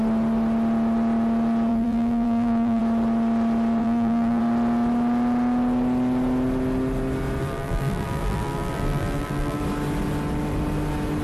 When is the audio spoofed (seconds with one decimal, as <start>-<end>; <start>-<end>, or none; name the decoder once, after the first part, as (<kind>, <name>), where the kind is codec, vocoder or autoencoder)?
1.7-2.8 (vocoder, BigVGAN v2); 3.8-4.4; 7.4-9.6